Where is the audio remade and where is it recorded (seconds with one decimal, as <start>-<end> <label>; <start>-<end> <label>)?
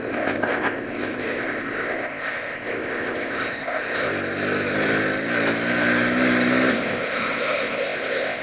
0.0-4.1 remade; 4.1-6.7 recorded; 6.7-8.4 remade